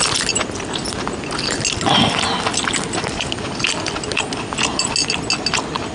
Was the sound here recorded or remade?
recorded